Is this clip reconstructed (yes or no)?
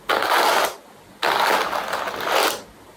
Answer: no